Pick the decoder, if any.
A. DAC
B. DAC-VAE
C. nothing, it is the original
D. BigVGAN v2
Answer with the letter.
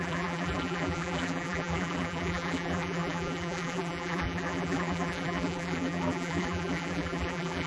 D